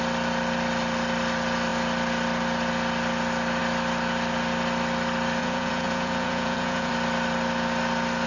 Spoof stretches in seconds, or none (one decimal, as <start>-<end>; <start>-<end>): 5.4-6.9